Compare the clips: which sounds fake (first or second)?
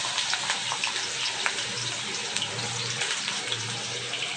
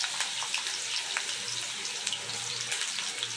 first